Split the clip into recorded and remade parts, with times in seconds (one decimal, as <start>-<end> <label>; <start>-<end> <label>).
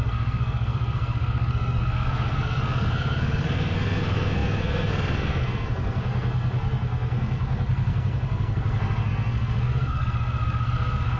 0.0-11.2 remade